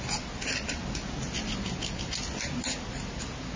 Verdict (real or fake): real